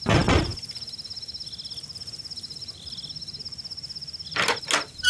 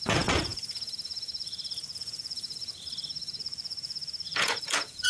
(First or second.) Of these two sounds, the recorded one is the first